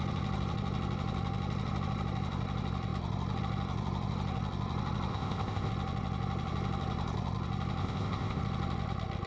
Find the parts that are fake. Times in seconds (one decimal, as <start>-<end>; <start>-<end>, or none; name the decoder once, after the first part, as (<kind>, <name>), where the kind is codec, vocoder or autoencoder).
5.1-5.7 (codec, ZipCodec); 7.8-8.4